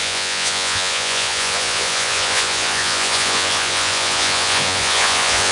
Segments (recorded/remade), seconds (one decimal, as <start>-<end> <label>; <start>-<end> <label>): 0.0-5.5 remade